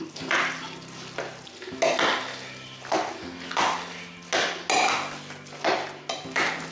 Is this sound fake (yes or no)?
no